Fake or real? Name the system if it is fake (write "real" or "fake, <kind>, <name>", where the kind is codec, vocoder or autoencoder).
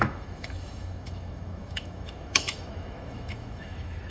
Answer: fake, autoencoder, DAC-VAE